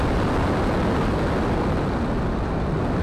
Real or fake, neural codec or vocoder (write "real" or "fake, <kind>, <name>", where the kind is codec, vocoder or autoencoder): real